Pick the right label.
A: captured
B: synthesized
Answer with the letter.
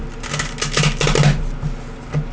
A